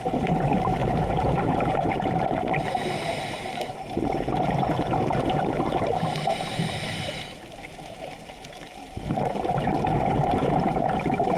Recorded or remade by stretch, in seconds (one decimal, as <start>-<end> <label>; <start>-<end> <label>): 0.0-11.4 remade